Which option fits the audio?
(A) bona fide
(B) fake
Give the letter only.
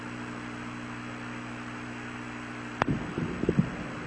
A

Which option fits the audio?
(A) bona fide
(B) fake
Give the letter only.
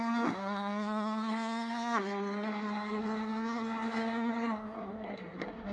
B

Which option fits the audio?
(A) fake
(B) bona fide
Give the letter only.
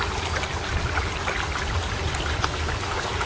B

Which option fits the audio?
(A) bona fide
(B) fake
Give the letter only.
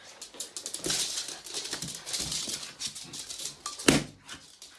A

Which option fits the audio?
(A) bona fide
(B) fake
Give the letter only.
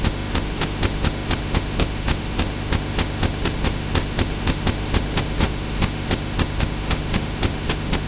B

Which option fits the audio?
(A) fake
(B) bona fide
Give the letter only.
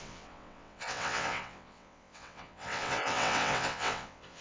A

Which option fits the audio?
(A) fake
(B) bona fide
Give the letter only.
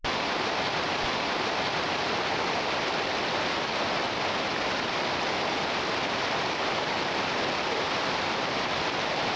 B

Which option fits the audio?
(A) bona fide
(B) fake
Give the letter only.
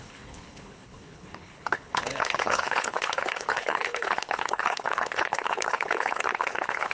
B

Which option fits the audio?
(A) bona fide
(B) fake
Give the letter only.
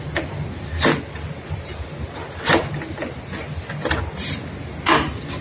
A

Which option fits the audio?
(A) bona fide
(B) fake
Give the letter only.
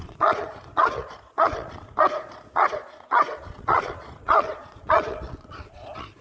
B